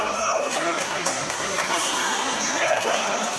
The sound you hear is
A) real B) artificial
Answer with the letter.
B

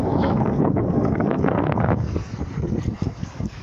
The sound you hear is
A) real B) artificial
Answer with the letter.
B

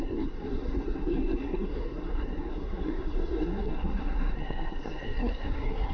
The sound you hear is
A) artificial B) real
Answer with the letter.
A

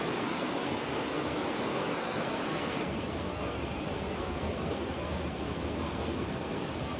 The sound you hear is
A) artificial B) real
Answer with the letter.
A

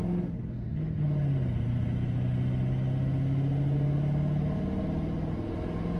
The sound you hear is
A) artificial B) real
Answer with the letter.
B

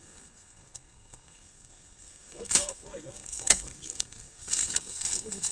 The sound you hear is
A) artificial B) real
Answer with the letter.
A